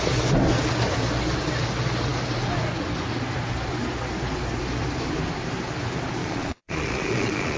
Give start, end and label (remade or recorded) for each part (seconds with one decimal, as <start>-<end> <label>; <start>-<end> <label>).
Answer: 0.0-6.2 recorded; 6.2-7.6 remade